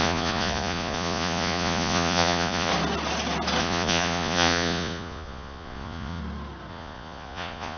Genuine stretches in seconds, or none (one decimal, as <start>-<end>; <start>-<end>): 2.7-3.6; 6.2-6.7